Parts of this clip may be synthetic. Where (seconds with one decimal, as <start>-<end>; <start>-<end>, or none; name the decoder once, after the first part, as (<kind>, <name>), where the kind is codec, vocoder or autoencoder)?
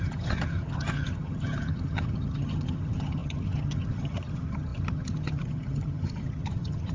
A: 0.0-6.9 (vocoder, HiFi-GAN)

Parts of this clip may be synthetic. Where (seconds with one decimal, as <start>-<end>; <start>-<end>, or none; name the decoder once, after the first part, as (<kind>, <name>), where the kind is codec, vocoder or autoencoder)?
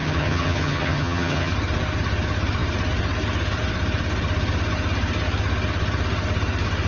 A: 0.0-1.5 (vocoder, HiFi-GAN)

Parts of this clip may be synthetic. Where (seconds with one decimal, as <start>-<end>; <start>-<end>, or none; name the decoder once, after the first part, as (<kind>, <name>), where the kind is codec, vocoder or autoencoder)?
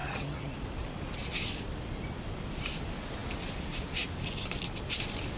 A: 0.0-0.5 (vocoder, HiFi-GAN)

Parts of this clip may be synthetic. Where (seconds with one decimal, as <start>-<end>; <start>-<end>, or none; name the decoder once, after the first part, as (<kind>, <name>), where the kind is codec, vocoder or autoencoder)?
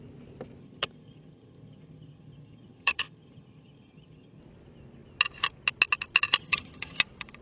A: 0.6-4.4 (vocoder, HiFi-GAN); 6.4-7.0